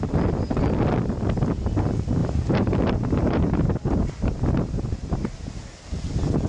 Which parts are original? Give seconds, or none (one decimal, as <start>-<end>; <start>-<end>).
0.0-2.2; 5.5-6.5